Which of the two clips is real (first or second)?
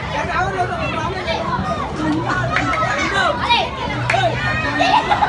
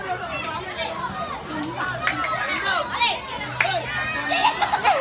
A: second